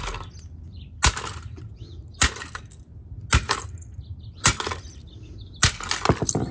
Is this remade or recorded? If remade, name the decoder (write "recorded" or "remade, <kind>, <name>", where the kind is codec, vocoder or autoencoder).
recorded